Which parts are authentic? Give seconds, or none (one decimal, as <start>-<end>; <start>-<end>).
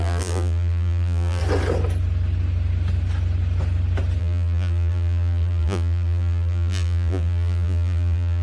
1.4-4.2